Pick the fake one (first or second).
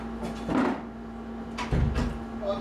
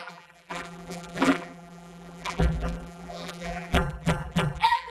second